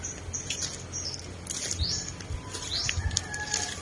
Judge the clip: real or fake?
real